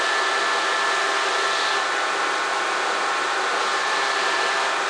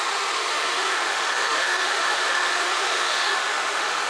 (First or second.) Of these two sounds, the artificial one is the second